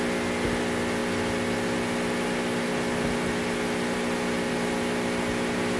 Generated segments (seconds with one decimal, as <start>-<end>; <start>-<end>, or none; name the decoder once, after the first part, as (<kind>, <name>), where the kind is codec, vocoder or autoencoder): none